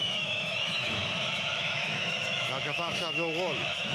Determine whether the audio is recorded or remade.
remade